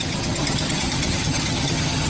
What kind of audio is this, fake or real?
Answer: fake